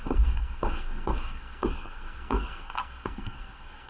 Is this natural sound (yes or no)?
no